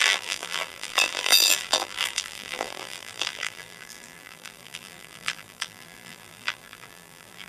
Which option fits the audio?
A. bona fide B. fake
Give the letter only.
B